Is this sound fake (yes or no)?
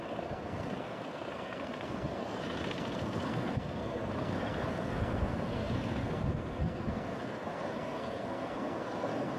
yes